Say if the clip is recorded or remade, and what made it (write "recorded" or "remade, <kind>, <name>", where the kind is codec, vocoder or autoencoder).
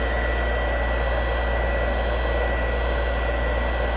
recorded